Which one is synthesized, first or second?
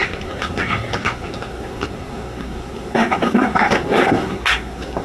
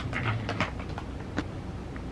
first